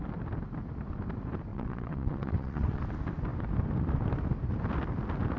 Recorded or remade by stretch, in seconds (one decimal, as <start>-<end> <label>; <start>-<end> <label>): 0.0-1.5 recorded; 1.5-2.8 remade; 2.8-5.4 recorded